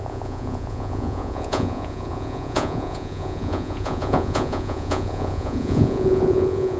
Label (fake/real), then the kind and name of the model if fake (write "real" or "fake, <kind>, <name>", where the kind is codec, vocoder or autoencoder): fake, vocoder, Vocos